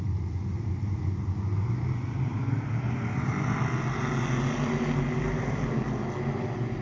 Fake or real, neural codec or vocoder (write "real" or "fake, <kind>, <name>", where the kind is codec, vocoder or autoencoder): real